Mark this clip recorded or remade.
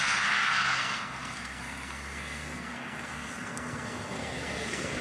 remade